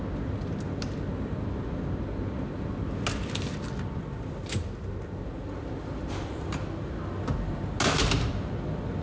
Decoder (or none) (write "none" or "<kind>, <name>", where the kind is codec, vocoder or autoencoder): none